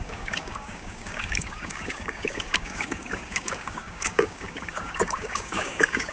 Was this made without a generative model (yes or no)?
no